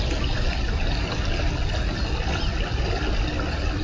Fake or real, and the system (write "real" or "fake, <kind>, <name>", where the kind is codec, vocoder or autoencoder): real